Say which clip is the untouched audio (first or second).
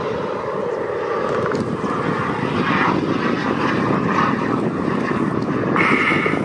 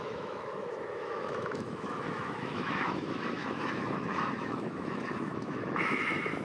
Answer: first